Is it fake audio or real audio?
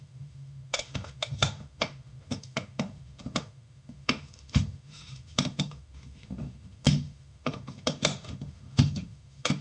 fake